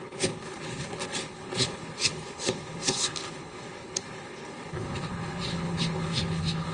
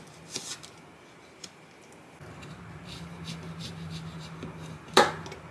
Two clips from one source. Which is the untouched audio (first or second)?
second